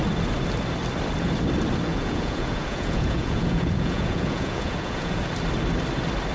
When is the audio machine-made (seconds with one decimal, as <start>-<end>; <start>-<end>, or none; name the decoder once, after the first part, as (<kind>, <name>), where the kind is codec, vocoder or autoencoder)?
1.9-5.2 (vocoder, Vocos)